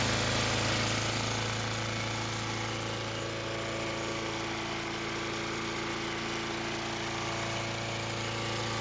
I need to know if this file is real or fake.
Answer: real